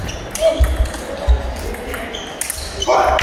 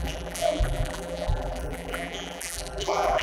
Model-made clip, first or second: second